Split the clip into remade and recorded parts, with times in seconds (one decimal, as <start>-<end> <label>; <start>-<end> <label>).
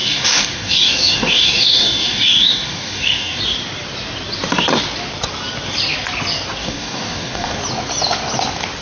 0.0-3.4 remade; 3.4-6.6 recorded; 6.6-7.6 remade; 7.6-8.8 recorded